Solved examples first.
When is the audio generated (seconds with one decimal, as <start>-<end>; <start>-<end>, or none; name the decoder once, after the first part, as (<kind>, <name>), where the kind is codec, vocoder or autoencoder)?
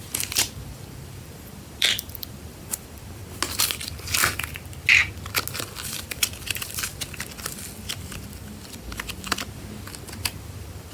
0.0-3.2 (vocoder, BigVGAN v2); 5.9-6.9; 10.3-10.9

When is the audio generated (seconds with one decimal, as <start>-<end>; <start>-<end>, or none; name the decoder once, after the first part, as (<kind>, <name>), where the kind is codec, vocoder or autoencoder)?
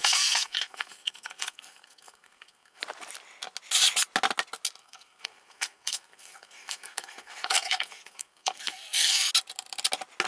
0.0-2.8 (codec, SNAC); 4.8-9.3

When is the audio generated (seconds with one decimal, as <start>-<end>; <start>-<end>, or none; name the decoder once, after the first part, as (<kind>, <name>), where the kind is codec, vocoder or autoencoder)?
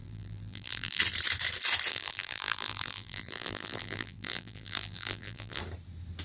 0.0-1.0 (vocoder, BigVGAN v2); 1.9-5.6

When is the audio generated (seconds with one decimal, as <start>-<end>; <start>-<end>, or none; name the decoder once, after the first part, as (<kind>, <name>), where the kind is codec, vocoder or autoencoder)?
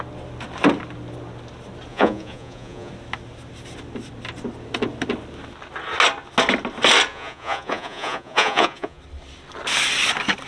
1.9-2.9 (vocoder, Vocos); 7.1-9.0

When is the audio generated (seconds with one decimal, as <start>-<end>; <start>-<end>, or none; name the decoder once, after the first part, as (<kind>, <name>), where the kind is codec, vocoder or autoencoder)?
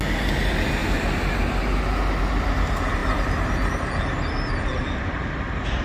none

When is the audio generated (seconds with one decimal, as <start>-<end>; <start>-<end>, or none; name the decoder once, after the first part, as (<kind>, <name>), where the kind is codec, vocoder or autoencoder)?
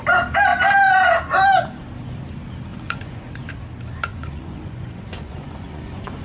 2.7-3.5 (vocoder, Vocos); 4.1-6.2